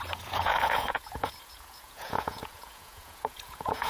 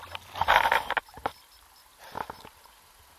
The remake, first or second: first